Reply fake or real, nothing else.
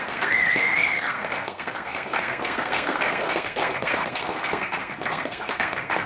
fake